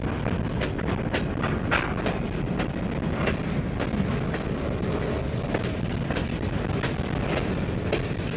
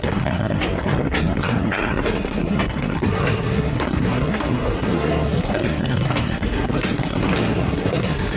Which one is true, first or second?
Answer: first